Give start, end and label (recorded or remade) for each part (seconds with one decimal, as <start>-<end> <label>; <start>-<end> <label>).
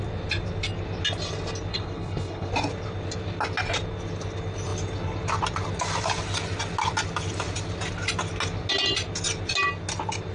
0.0-1.7 recorded; 1.7-2.5 remade; 2.5-10.3 recorded